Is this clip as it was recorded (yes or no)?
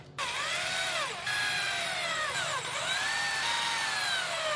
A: yes